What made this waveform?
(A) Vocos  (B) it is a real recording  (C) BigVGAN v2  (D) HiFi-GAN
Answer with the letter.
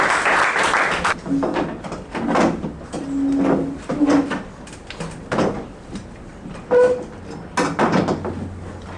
B